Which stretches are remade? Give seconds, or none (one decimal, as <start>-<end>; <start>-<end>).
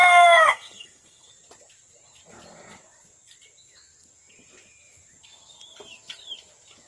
0.0-1.3